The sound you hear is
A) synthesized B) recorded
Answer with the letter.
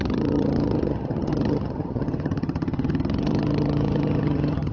A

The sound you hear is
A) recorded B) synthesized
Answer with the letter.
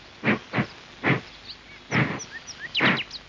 A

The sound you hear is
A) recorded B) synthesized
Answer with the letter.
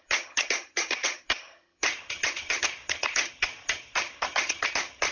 B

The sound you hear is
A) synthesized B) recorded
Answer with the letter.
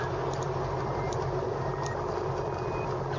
B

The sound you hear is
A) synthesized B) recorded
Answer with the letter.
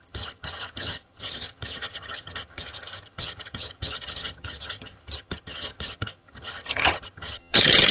A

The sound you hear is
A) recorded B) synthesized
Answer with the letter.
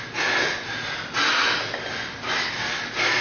A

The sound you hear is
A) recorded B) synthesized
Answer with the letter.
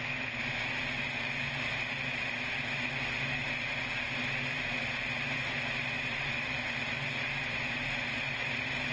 A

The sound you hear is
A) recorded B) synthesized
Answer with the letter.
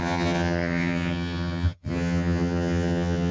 B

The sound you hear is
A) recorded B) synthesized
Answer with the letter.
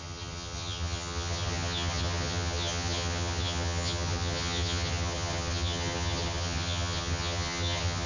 B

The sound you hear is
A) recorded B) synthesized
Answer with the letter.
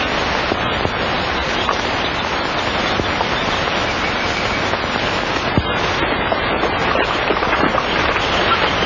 A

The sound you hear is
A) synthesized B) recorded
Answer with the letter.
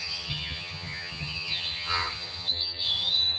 A